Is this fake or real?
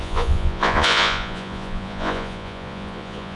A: fake